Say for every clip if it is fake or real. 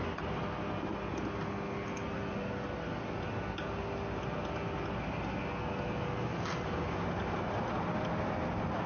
real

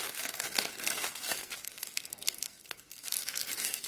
fake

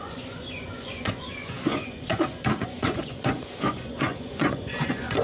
fake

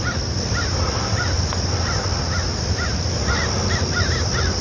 real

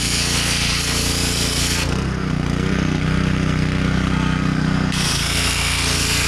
fake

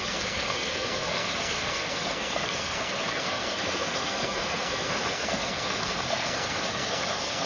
fake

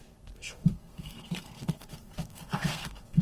fake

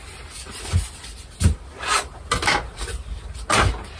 real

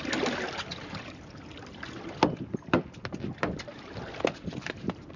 real